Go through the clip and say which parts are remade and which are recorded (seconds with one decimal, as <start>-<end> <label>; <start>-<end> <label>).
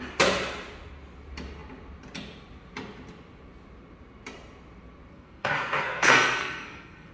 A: 0.0-5.1 recorded; 5.1-7.1 remade